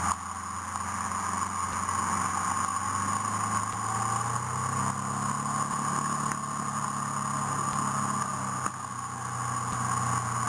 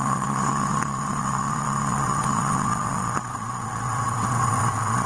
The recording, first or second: first